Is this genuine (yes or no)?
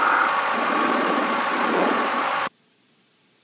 no